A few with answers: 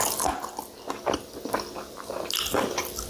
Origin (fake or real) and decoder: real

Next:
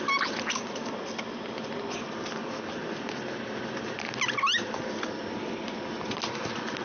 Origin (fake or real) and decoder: real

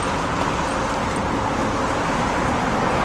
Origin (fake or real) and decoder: real